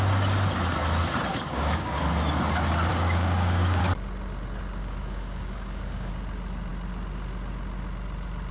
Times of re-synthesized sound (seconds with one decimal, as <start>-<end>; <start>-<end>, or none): 1.3-2.0; 2.9-3.8; 4.8-6.1